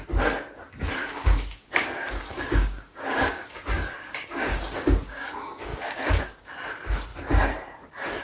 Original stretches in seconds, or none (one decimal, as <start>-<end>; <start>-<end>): 0.0-1.0; 5.3-5.7; 6.2-8.2